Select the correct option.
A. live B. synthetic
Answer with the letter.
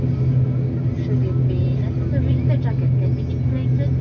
A